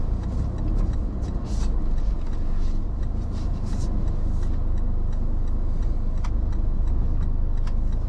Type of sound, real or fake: real